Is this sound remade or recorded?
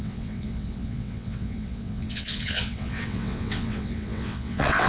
remade